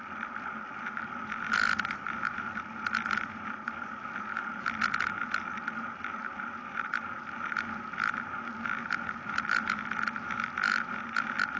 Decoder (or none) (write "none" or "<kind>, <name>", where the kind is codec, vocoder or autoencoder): none